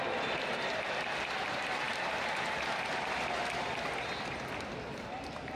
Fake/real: real